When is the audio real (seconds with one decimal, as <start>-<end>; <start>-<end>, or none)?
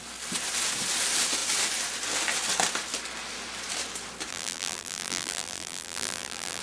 0.0-4.3